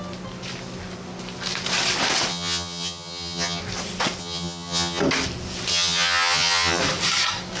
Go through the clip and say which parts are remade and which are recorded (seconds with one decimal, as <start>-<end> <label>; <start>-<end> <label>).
0.0-2.3 recorded; 2.3-3.6 remade; 3.6-4.2 recorded; 4.2-5.0 remade; 5.0-5.7 recorded; 5.7-6.8 remade; 6.8-7.6 recorded